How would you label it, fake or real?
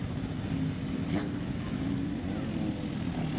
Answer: real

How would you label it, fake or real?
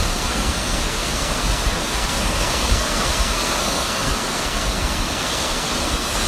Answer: fake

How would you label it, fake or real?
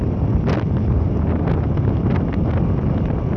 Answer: real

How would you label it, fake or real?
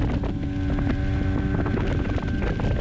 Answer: real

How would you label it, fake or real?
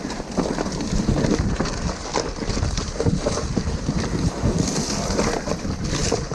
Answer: real